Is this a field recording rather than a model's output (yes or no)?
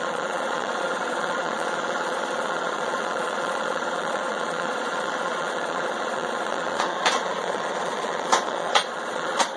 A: no